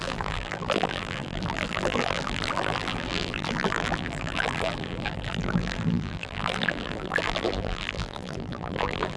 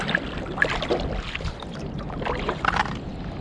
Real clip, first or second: second